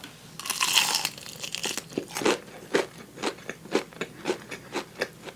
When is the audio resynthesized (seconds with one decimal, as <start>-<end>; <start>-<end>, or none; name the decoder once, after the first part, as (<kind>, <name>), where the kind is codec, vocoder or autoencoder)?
none